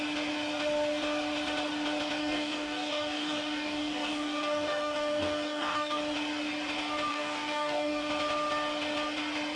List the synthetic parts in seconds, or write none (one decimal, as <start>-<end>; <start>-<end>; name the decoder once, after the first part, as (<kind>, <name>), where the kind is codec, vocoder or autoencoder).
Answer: 2.2-6.0 (codec, DAC); 7.1-8.1